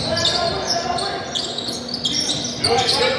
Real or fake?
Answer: real